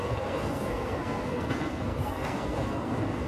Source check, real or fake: fake